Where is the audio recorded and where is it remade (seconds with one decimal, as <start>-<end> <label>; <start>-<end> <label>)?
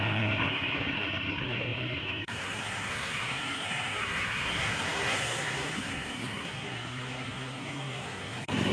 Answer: 0.0-8.7 remade